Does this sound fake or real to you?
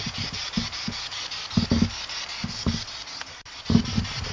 real